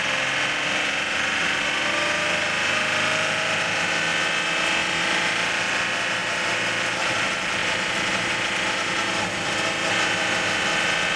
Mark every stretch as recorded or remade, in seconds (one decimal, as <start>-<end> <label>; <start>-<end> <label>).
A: 0.0-6.2 recorded; 6.2-6.7 remade; 6.7-7.6 recorded; 7.6-8.3 remade; 8.3-11.2 recorded